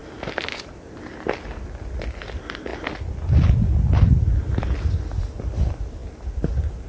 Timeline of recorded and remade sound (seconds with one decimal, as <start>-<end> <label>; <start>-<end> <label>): 0.0-6.9 recorded